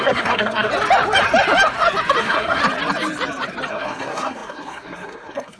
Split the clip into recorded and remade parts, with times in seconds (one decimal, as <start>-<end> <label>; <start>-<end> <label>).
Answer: 0.0-0.7 remade; 0.7-2.2 recorded; 2.2-2.6 remade; 2.6-3.7 recorded; 3.7-5.6 remade